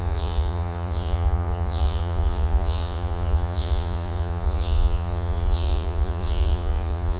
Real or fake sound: fake